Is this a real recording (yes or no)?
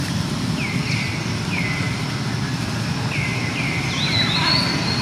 yes